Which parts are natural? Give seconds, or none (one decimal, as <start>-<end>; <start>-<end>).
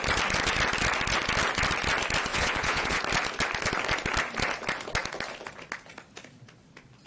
0.0-2.3; 3.0-7.1